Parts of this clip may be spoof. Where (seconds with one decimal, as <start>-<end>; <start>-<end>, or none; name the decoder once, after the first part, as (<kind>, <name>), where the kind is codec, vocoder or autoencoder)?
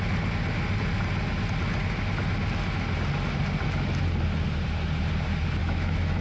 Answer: 5.6-6.2 (autoencoder, DAC-VAE)